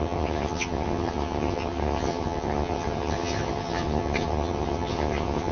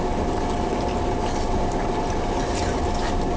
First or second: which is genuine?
second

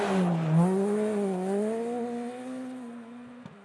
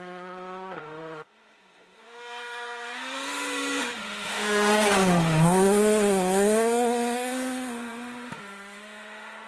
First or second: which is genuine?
first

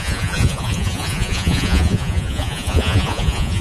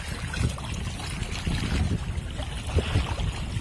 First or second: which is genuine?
second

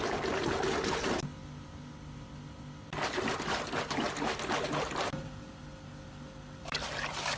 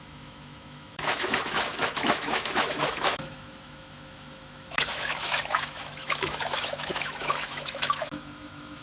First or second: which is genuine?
first